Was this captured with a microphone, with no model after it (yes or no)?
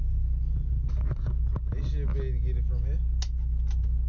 yes